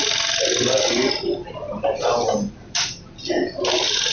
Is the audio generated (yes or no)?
no